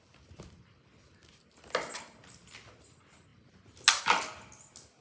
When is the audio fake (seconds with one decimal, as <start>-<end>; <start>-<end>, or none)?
none